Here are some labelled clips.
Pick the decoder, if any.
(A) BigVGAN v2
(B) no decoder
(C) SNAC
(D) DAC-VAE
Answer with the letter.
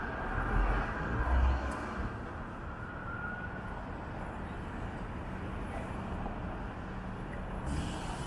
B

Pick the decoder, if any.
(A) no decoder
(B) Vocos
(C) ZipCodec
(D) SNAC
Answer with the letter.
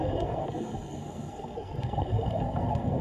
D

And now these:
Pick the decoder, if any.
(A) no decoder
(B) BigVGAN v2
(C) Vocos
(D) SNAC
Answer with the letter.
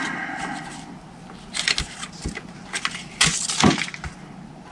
A